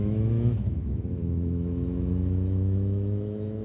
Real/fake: fake